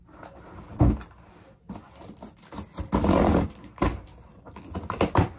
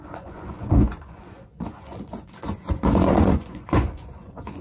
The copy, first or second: second